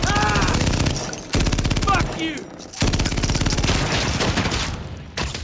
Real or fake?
real